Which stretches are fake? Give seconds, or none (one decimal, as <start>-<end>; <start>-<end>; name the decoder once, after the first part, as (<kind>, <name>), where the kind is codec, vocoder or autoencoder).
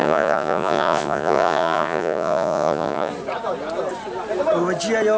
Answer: 0.0-3.1 (vocoder, Vocos)